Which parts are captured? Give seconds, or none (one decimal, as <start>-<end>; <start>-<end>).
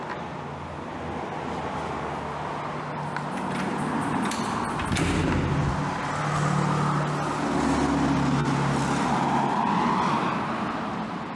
0.0-11.4